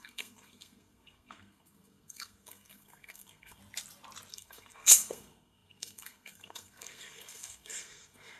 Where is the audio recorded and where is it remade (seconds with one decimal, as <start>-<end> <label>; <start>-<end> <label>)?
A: 0.0-3.6 remade; 3.6-4.3 recorded; 4.3-8.4 remade